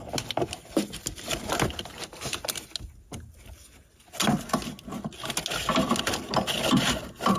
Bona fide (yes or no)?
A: yes